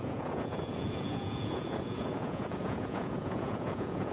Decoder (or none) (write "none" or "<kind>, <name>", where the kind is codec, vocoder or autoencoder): vocoder, Vocos